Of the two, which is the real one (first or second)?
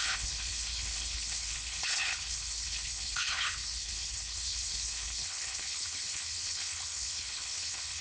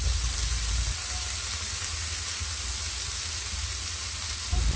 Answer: second